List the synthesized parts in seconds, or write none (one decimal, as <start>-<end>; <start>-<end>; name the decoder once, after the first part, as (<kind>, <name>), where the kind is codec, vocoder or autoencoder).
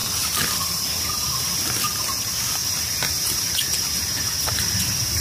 none